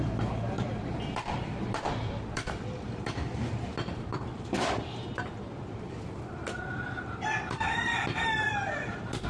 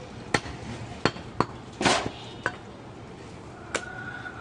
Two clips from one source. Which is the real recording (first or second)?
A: second